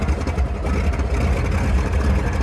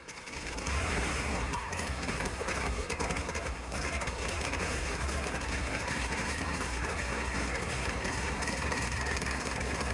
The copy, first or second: second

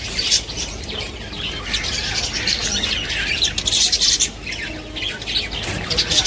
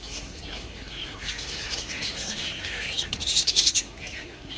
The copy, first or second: second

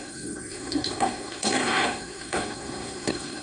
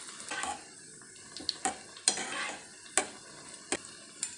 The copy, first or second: first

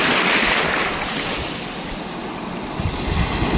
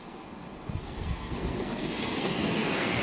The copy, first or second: second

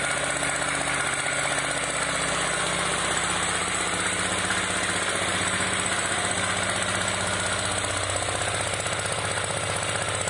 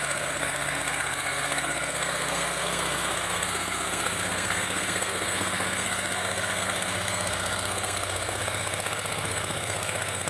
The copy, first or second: second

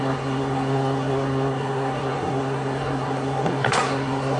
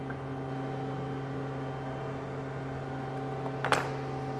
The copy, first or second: first